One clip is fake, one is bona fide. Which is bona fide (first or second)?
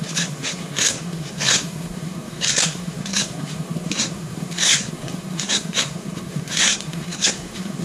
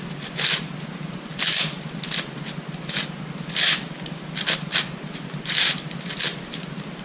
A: second